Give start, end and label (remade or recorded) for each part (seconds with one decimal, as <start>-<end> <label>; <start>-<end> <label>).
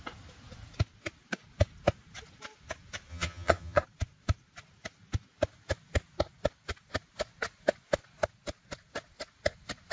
0.0-3.1 recorded; 3.1-3.8 remade; 3.8-9.9 recorded